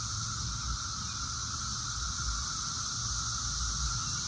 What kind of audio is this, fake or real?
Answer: real